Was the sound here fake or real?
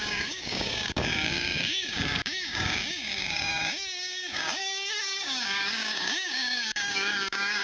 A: fake